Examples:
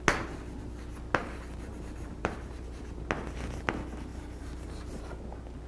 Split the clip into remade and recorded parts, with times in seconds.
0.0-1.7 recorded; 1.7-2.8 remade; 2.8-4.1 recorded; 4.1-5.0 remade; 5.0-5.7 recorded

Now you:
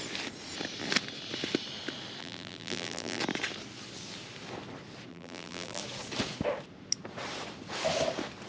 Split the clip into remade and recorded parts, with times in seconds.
0.0-2.2 recorded; 2.2-3.2 remade; 3.2-5.1 recorded; 5.1-5.8 remade; 5.8-8.5 recorded

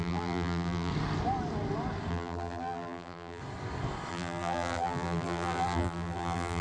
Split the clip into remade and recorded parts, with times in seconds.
0.0-0.9 remade; 0.9-2.1 recorded; 2.1-3.4 remade; 3.4-4.1 recorded; 4.1-6.6 remade

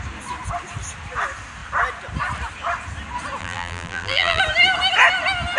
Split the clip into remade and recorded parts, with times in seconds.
0.0-3.4 recorded; 3.4-4.4 remade; 4.4-5.6 recorded

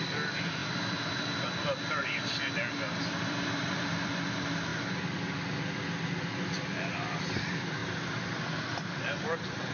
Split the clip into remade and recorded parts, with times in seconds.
0.0-4.7 remade; 4.7-6.2 recorded; 6.2-7.8 remade; 7.8-8.4 recorded; 8.4-9.7 remade

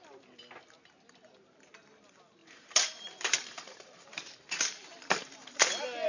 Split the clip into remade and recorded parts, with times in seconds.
0.0-2.4 recorded; 2.4-5.6 remade; 5.6-6.1 recorded